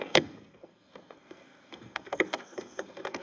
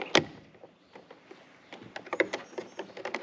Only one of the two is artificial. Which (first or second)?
first